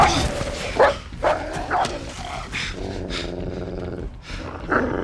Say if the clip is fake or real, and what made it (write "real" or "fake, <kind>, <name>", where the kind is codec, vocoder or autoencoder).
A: real